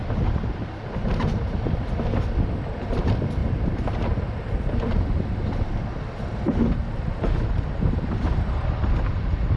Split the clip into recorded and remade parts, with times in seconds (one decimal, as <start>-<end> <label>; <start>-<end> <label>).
0.0-9.6 recorded